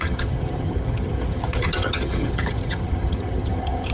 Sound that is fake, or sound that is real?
fake